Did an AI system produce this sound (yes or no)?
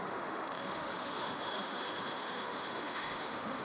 yes